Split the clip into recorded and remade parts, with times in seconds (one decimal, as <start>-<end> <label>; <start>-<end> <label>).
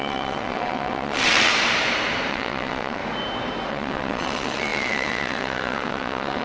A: 0.0-1.5 remade; 1.5-2.3 recorded; 2.3-3.0 remade; 3.0-3.7 recorded; 3.7-6.4 remade